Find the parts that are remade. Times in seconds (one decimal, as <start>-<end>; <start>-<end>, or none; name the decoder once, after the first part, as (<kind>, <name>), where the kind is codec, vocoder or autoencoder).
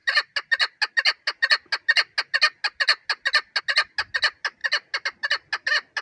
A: none